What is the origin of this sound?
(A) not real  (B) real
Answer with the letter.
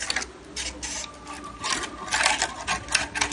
B